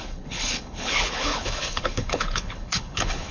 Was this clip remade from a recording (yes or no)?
yes